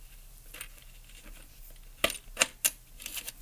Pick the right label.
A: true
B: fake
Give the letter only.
A